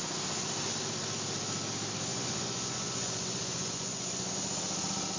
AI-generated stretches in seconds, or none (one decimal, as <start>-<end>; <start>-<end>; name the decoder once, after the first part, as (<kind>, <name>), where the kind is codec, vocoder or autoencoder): 2.1-4.3 (vocoder, Vocos)